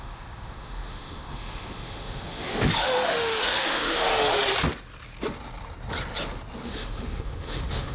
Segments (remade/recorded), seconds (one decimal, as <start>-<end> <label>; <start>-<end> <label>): 0.0-4.1 remade; 4.1-6.6 recorded; 6.6-7.9 remade